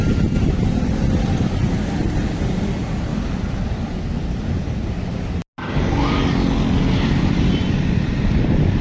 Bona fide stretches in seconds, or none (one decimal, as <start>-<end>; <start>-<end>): 0.0-8.8